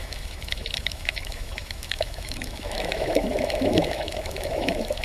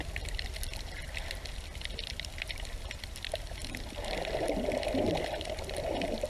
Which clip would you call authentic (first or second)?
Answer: second